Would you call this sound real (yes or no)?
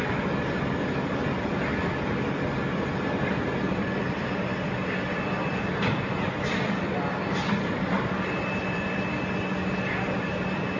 yes